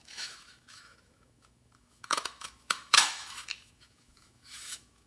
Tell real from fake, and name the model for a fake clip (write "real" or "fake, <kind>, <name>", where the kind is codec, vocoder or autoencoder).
fake, autoencoder, DAC-VAE